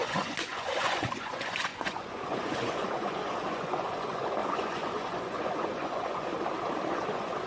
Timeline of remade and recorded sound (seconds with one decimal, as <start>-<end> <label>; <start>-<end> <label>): 0.0-6.3 remade; 6.3-6.9 recorded; 6.9-7.5 remade